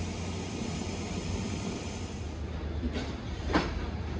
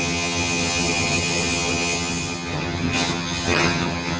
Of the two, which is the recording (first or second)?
first